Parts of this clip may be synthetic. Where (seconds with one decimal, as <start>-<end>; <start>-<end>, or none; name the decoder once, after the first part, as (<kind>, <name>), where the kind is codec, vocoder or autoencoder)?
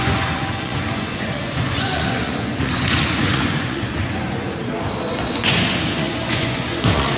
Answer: 0.0-4.7 (vocoder, Vocos); 5.3-7.2